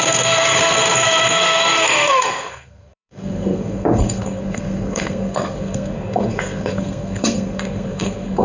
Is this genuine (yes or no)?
no